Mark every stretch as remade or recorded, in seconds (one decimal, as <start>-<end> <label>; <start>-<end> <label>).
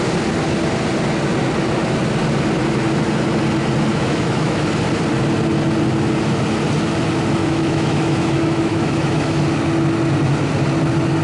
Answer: 0.0-3.9 recorded; 3.9-4.7 remade; 4.7-7.4 recorded; 7.4-9.4 remade; 9.4-11.2 recorded